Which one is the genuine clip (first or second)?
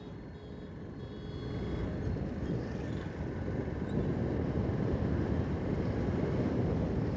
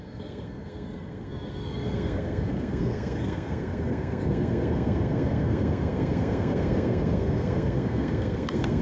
first